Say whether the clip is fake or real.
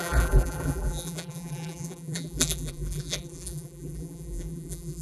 fake